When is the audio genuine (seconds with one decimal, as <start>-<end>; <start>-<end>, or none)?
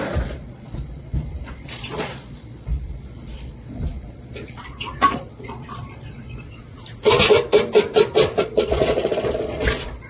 6.6-8.4